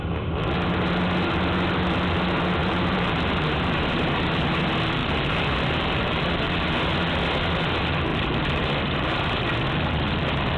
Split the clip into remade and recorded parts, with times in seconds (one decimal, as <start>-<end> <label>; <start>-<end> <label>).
0.0-2.6 recorded; 2.6-4.4 remade; 4.4-5.0 recorded; 5.0-6.3 remade; 6.3-8.1 recorded; 8.1-9.4 remade; 9.4-10.6 recorded